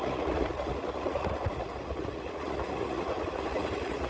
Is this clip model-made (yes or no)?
yes